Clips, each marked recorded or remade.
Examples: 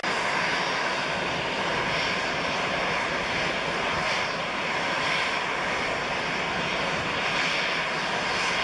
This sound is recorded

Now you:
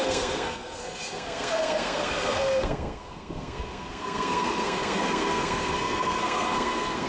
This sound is remade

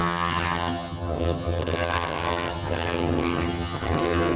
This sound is remade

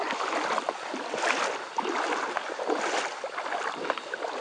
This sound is recorded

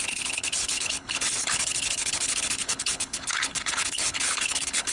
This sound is remade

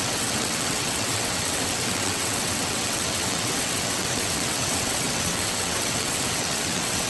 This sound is remade